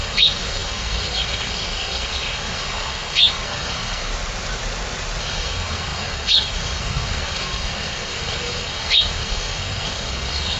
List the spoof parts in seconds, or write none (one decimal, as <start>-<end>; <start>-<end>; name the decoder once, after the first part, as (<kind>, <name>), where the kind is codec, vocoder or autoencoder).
0.0-4.1 (codec, SNAC); 5.2-10.6